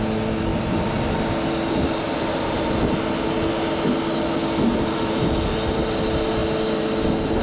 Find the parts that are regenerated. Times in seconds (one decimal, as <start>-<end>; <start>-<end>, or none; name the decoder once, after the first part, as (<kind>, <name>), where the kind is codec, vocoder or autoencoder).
none